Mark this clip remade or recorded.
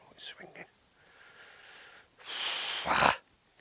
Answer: recorded